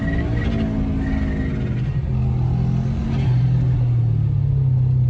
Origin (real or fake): real